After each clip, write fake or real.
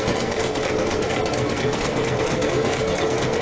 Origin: fake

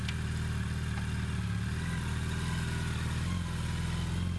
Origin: real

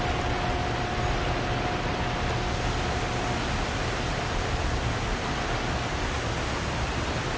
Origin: real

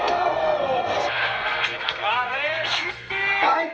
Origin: fake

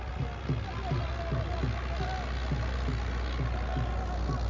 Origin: real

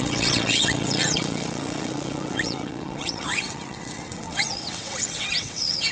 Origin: fake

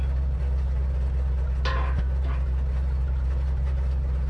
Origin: real